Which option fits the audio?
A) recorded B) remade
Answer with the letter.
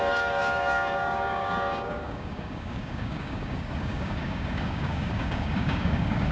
B